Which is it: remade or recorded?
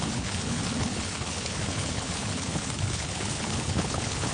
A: remade